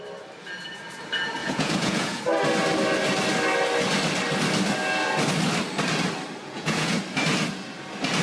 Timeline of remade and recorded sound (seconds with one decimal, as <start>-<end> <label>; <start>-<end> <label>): 0.0-1.4 recorded; 1.4-2.2 remade; 2.2-6.4 recorded; 6.4-7.0 remade; 7.0-8.2 recorded